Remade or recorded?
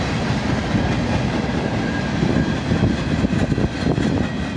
recorded